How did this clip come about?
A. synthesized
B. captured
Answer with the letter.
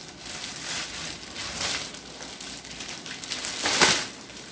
B